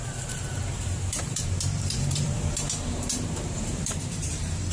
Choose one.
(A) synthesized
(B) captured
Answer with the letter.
A